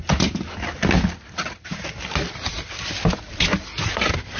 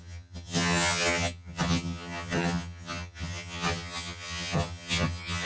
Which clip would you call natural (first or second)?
first